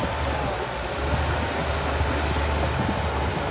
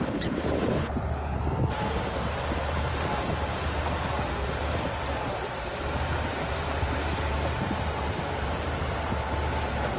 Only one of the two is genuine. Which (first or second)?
first